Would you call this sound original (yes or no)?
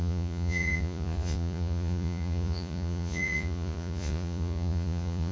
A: no